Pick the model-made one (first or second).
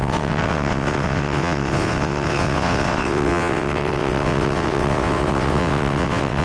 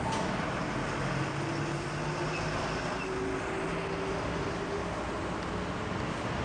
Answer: first